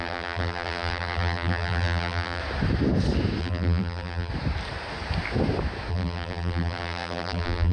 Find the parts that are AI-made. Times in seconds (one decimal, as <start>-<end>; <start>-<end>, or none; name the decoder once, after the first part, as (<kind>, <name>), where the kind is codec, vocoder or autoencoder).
0.0-2.4 (vocoder, BigVGAN v2); 3.4-4.3; 5.9-7.7